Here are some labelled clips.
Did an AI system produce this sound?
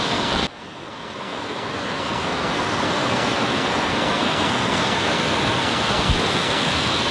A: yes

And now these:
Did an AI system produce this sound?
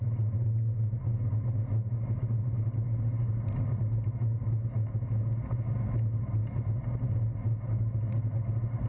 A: no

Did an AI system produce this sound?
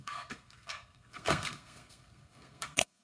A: yes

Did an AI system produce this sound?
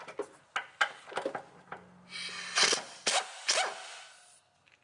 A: no